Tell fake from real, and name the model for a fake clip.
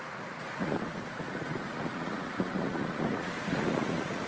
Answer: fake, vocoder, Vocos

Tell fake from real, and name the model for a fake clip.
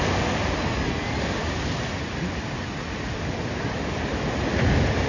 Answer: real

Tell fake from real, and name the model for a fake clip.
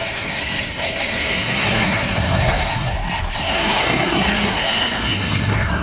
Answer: fake, codec, SNAC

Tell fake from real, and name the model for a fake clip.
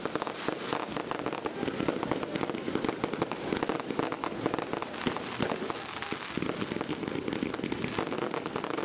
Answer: real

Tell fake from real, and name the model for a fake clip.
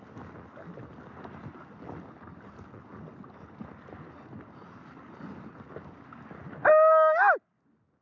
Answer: real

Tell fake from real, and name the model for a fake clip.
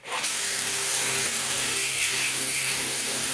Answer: fake, codec, DAC